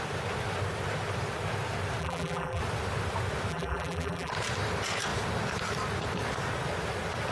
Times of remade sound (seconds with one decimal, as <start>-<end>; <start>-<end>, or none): 2.0-2.6; 3.5-4.3